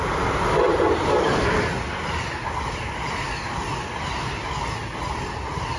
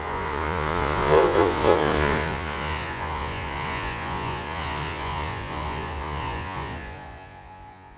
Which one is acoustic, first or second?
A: first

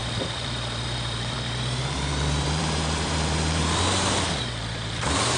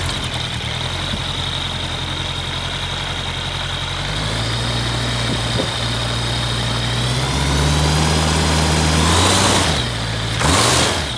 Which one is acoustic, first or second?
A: second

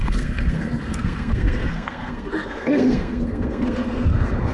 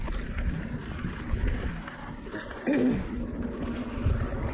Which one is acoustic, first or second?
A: second